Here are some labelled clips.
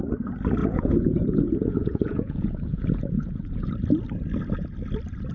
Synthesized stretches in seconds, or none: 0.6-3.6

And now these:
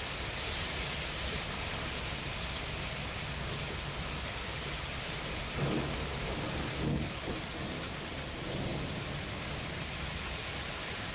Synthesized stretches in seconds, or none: 6.7-7.3

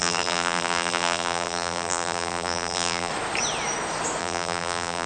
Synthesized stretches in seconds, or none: 0.0-3.1; 4.2-5.1